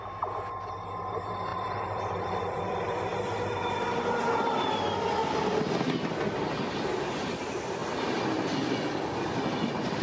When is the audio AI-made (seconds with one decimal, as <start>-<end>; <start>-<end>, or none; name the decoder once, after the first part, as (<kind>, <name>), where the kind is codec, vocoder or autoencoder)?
none